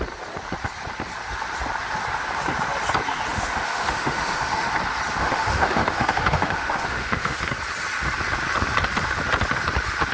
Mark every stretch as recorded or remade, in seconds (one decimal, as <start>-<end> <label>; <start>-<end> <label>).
0.0-3.3 recorded; 3.3-4.7 remade; 4.7-5.2 recorded; 5.2-7.4 remade; 7.4-10.1 recorded